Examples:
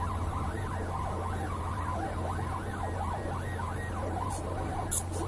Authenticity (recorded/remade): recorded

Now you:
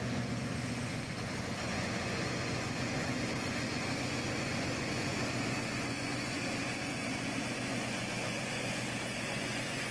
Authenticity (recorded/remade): remade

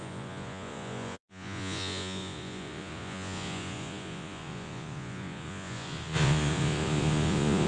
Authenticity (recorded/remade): remade